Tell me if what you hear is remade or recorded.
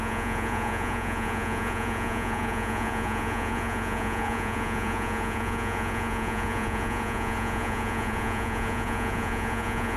remade